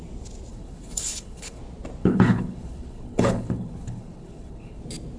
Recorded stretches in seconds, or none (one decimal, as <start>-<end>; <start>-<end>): 0.0-0.5; 1.6-2.0; 4.8-5.2